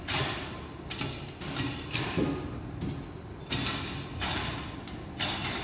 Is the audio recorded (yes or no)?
yes